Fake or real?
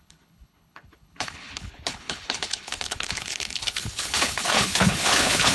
fake